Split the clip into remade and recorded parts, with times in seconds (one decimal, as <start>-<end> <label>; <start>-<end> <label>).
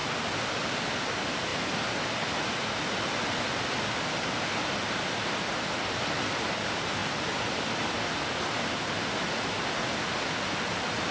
0.0-11.1 recorded